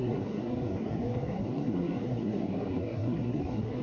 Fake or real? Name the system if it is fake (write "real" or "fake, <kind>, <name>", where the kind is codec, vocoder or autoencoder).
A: fake, codec, SNAC